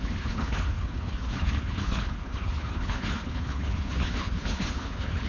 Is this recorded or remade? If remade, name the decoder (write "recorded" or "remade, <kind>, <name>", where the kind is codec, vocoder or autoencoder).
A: remade, codec, HILCodec